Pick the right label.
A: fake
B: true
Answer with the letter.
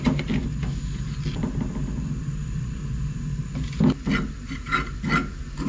B